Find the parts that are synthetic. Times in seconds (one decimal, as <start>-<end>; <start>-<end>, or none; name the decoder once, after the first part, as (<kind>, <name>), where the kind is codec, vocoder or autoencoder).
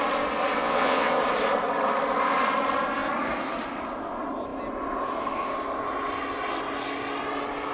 0.6-1.2 (vocoder, WaveNeXt)